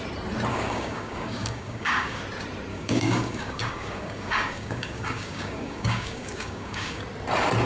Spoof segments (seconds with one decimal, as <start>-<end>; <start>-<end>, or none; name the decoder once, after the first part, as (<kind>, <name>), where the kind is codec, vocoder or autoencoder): 0.5-2.2 (codec, DAC); 2.7-7.0